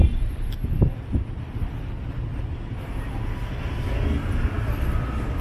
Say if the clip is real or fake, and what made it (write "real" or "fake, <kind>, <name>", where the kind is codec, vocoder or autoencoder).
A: real